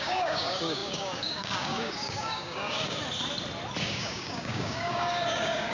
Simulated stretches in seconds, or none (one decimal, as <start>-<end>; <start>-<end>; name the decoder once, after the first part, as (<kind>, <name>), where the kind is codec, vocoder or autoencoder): 0.0-3.0 (codec, DAC); 3.8-5.7